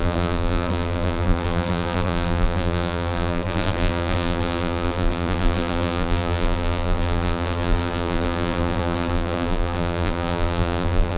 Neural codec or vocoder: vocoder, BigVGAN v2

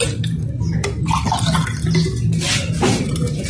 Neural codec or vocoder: none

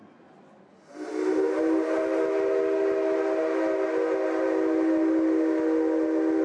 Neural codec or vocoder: none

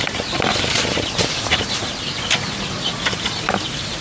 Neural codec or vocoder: vocoder, BigVGAN v2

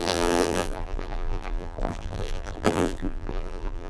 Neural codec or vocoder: vocoder, BigVGAN v2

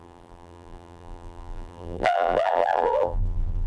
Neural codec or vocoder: vocoder, BigVGAN v2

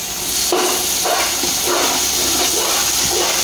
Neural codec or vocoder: none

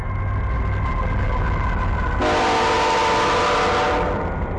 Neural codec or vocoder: none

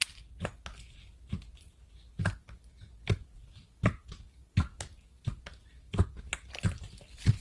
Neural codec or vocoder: none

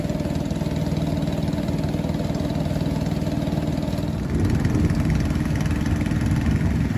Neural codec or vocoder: none